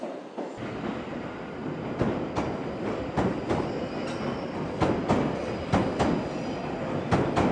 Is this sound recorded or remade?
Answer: recorded